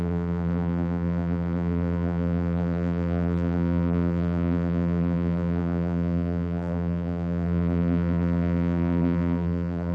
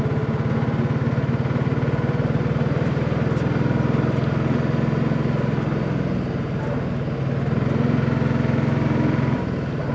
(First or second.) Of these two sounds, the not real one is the first